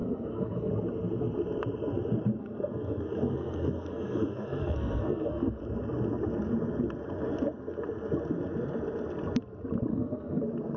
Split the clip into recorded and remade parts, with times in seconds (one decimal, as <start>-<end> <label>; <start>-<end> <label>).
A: 0.0-0.7 remade; 0.7-2.4 recorded; 2.4-5.6 remade; 5.6-9.9 recorded; 9.9-10.4 remade; 10.4-10.8 recorded